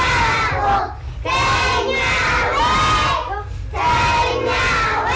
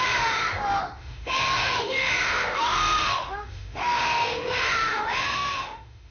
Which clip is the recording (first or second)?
first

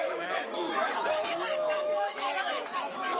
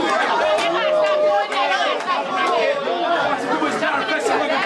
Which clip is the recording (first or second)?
second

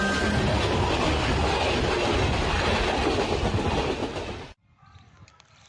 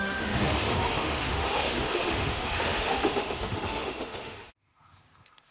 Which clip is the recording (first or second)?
first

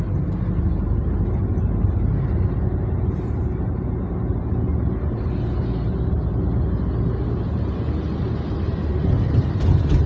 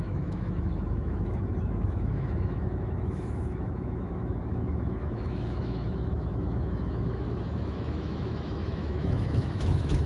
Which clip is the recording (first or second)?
first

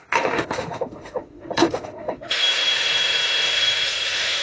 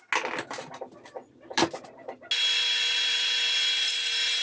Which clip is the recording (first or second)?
second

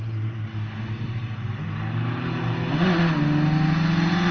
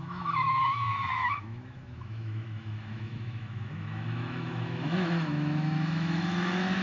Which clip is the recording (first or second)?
first